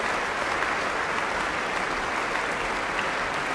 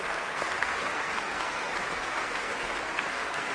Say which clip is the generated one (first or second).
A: second